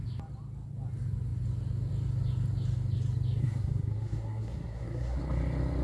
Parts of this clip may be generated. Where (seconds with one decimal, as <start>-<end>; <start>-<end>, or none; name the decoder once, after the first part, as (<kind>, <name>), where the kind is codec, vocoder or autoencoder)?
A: 3.4-5.2 (codec, SNAC)